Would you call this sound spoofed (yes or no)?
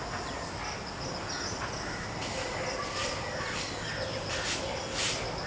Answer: no